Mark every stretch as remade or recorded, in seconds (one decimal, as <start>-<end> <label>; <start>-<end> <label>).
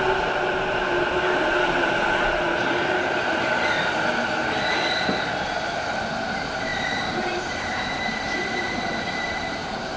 0.0-6.7 recorded; 6.7-9.6 remade; 9.6-10.0 recorded